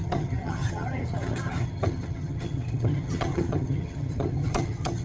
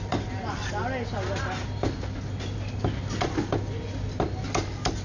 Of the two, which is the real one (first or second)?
second